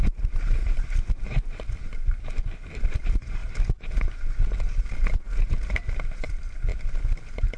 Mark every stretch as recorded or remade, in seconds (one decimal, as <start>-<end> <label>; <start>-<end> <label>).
0.0-0.6 remade; 0.6-1.2 recorded; 1.2-3.4 remade; 3.4-4.8 recorded; 4.8-7.6 remade